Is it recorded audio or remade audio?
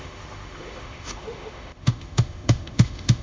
remade